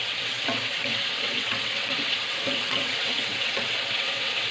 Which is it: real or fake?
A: fake